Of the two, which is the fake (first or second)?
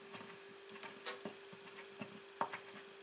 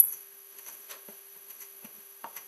second